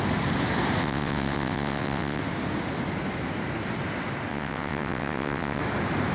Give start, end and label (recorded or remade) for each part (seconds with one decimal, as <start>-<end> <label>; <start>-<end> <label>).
0.0-0.8 recorded; 0.8-2.2 remade; 2.2-4.3 recorded; 4.3-5.6 remade; 5.6-6.1 recorded